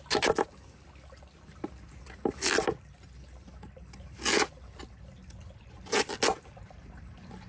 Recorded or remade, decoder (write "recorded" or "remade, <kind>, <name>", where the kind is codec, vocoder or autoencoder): recorded